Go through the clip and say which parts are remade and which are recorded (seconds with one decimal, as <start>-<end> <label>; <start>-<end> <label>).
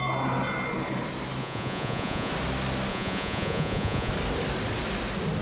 0.0-1.4 recorded; 1.4-2.3 remade; 2.3-2.9 recorded; 2.9-4.1 remade; 4.1-5.4 recorded